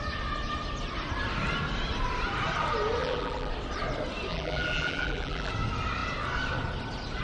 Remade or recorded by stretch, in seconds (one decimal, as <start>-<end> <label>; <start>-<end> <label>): 0.0-3.0 recorded; 3.0-3.5 remade; 3.5-4.3 recorded; 4.3-5.5 remade; 5.5-7.2 recorded